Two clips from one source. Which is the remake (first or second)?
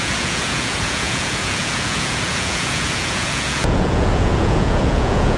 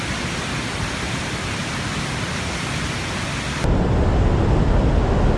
first